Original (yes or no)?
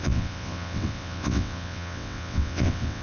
no